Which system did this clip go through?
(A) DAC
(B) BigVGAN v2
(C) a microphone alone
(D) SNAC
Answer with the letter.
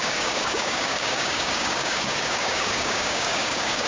A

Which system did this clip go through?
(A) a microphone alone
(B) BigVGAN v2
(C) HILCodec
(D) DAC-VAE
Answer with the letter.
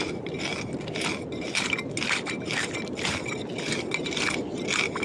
A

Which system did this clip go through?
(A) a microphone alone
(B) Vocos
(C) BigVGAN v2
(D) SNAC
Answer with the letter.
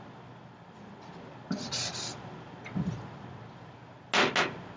A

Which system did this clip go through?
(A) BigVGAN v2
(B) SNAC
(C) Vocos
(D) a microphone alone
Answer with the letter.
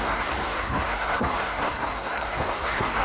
B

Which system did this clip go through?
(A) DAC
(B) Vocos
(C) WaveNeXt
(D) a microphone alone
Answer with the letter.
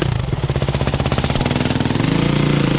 D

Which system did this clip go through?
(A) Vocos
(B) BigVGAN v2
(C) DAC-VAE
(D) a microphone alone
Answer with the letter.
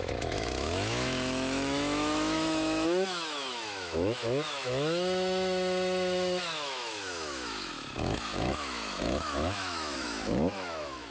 C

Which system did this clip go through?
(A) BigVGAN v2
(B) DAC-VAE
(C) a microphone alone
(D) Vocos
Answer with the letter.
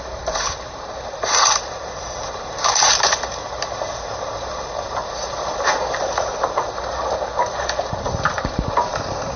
A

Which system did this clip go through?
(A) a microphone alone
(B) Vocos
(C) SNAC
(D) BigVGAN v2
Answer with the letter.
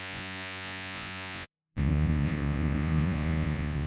B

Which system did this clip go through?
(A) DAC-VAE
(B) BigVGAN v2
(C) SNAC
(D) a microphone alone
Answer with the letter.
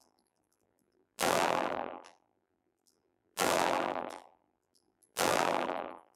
B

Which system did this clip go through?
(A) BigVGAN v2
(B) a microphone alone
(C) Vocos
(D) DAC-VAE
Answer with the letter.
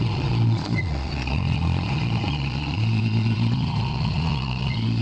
C